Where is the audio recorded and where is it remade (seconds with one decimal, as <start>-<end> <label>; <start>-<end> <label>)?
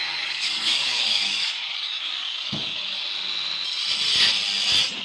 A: 0.0-3.0 remade; 3.0-5.0 recorded